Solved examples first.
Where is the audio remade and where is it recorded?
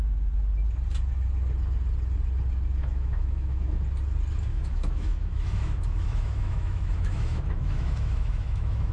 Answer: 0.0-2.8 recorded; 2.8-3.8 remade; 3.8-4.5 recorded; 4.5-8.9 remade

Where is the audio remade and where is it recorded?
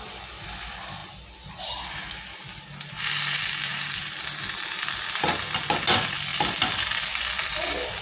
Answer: 0.0-3.7 recorded; 3.7-4.4 remade; 4.4-6.3 recorded; 6.3-7.2 remade; 7.2-8.0 recorded